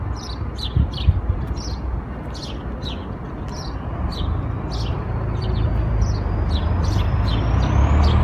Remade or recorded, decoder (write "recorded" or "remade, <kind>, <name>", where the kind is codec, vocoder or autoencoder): recorded